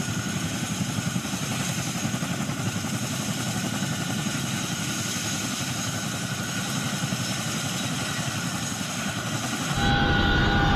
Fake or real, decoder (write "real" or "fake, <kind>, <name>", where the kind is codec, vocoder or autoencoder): real